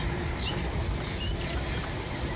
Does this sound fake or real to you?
real